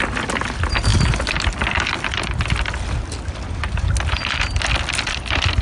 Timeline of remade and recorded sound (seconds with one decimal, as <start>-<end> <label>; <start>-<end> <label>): 0.0-5.6 recorded